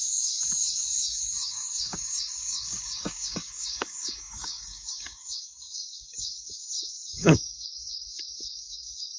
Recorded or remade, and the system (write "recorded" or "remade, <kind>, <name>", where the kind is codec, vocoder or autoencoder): remade, codec, DAC